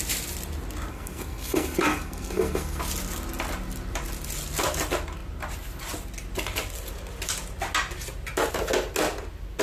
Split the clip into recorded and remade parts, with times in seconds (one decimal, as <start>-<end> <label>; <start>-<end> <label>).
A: 0.0-0.9 recorded; 0.9-2.8 remade; 2.8-9.6 recorded